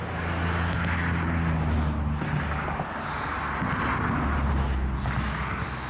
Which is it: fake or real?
real